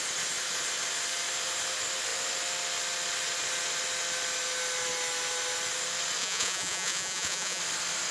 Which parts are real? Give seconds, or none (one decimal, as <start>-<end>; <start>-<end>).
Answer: 0.0-6.2; 7.6-8.1